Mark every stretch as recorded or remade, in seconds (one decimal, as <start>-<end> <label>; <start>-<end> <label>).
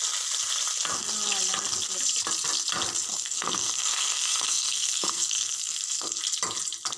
0.0-3.1 recorded; 3.1-6.2 remade; 6.2-7.0 recorded